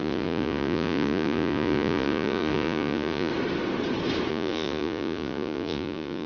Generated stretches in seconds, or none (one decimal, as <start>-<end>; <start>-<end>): 0.0-3.3; 4.3-6.3